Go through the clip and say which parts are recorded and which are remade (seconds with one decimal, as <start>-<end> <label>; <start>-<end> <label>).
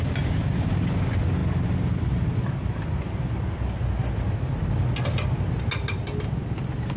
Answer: 0.0-7.0 recorded